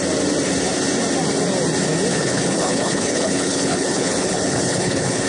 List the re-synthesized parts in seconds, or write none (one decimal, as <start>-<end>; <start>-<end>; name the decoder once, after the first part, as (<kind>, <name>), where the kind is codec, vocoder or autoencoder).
2.1-5.3 (codec, HILCodec)

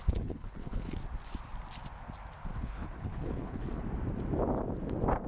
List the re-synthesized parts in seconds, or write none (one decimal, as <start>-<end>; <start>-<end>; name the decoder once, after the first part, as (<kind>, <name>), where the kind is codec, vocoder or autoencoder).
0.0-0.9 (codec, HILCodec); 2.5-3.8

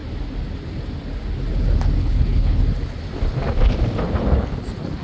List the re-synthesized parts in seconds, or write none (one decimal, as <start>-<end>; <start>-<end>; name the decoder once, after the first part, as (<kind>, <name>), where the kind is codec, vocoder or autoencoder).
2.0-2.6 (codec, HILCodec)

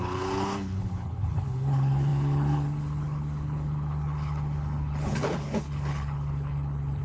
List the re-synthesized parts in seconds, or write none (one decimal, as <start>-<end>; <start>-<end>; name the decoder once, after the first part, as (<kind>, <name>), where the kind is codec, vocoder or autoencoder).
0.0-7.0 (codec, HILCodec)

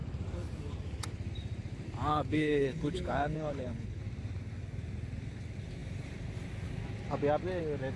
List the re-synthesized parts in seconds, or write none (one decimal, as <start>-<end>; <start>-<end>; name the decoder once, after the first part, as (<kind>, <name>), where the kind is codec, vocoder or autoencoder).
2.1-4.0 (codec, HILCodec)

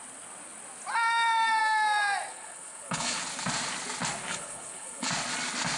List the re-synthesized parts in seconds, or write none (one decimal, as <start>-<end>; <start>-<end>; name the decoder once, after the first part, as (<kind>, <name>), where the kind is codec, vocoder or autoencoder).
2.3-3.2 (codec, HILCodec); 4.3-5.1

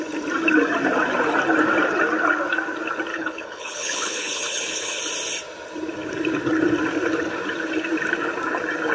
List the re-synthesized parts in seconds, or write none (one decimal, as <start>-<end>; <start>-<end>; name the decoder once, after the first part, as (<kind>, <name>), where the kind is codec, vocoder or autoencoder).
3.1-5.0 (codec, HILCodec)

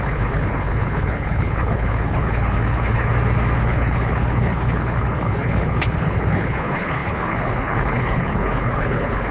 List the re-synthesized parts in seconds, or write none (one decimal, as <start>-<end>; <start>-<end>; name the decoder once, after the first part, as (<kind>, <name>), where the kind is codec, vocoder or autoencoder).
0.0-3.1 (codec, HILCodec); 3.6-9.3